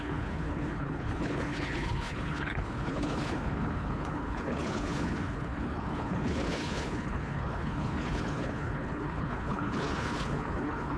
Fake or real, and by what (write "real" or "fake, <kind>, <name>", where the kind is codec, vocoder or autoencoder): fake, codec, HILCodec